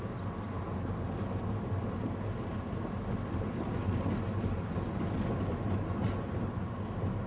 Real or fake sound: real